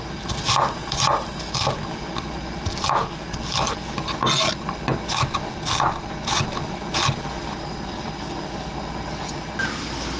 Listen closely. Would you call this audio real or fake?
real